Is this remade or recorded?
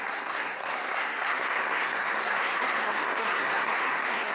remade